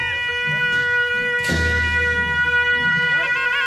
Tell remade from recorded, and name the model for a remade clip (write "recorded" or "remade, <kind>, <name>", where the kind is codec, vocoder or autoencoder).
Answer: recorded